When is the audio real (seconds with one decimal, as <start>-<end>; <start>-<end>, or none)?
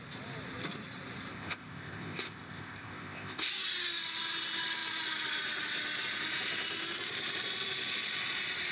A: 0.0-1.3; 3.5-8.7